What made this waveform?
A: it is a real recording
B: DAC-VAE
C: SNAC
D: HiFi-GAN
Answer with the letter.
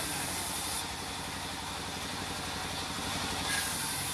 A